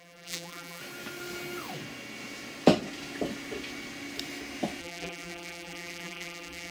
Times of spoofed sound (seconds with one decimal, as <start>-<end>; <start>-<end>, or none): 0.0-0.8; 4.8-6.7

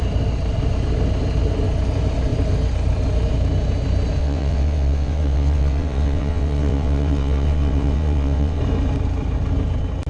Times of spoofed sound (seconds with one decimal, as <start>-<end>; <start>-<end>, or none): 4.2-8.6

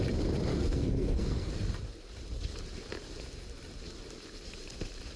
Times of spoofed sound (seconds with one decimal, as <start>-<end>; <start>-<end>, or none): 0.5-1.5

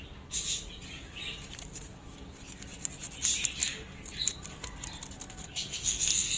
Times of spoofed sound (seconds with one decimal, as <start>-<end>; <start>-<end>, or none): 5.4-6.4

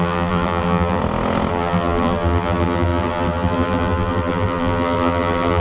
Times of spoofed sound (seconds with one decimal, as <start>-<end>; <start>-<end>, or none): 0.0-1.0; 1.5-5.6